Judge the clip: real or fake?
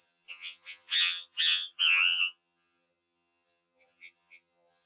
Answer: fake